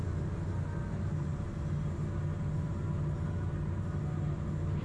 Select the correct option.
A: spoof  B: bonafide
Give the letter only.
B